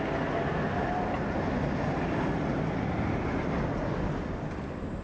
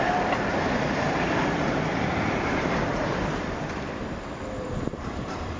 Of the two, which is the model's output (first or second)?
second